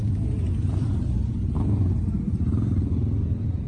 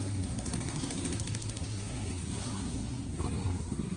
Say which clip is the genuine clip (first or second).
first